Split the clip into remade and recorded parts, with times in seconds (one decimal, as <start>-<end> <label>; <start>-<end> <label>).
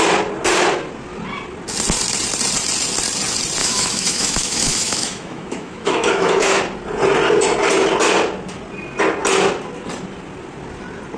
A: 0.0-3.6 recorded; 3.6-6.6 remade; 6.6-11.2 recorded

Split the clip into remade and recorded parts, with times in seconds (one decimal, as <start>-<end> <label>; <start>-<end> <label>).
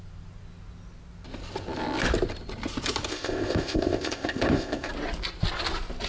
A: 0.0-3.1 recorded; 3.1-4.9 remade; 4.9-6.1 recorded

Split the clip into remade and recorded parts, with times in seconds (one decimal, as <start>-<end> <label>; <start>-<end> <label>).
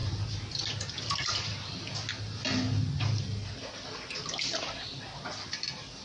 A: 0.0-6.0 recorded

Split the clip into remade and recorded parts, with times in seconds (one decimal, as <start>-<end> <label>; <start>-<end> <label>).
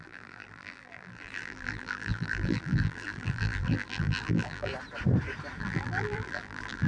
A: 0.0-4.7 remade; 4.7-5.6 recorded; 5.6-6.9 remade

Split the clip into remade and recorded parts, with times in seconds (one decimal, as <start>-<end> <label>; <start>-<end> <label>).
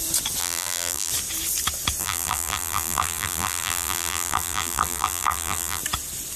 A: 0.0-0.4 recorded; 0.4-1.1 remade; 1.1-2.0 recorded; 2.0-5.8 remade; 5.8-6.4 recorded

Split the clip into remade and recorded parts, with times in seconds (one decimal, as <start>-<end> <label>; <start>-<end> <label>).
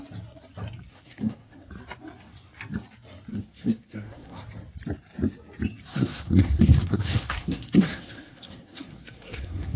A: 0.0-0.9 recorded; 0.9-1.7 remade; 1.7-3.3 recorded; 3.3-4.4 remade; 4.4-5.9 recorded; 5.9-9.8 remade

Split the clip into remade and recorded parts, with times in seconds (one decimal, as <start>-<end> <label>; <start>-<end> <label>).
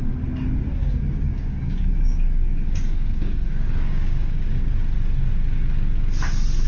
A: 0.0-0.7 recorded; 0.7-4.7 remade; 4.7-6.7 recorded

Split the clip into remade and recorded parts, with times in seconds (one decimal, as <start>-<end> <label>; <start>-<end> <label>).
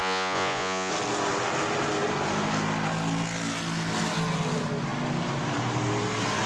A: 0.0-0.9 remade; 0.9-6.5 recorded